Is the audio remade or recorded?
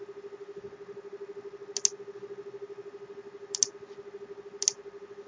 recorded